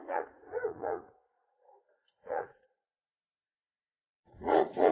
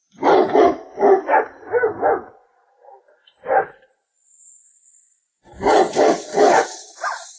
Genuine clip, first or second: second